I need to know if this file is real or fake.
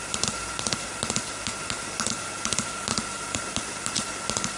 real